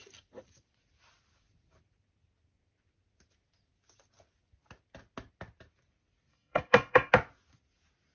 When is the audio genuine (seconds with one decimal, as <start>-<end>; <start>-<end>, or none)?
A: 0.0-6.3; 7.1-8.1